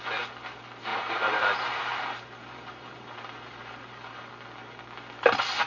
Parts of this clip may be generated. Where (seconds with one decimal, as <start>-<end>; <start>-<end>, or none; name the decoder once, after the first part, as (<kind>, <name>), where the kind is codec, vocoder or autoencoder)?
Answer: 0.9-4.3 (vocoder, BigVGAN v2)